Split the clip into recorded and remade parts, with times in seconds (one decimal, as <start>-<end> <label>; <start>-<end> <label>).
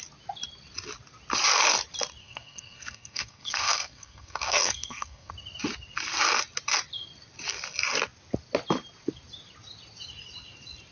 0.0-2.2 recorded; 2.2-5.3 remade; 5.3-10.9 recorded